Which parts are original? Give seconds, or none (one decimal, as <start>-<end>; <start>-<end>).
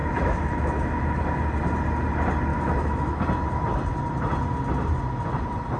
1.2-2.5; 3.2-5.8